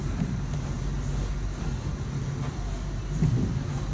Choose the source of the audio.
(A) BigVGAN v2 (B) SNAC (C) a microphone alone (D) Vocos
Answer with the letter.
C